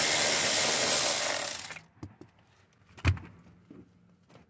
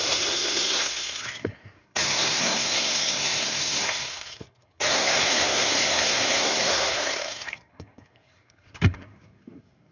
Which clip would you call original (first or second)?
first